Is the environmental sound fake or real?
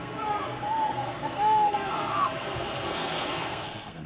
fake